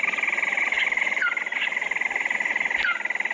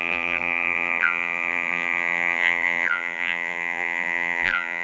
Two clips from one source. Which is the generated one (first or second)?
second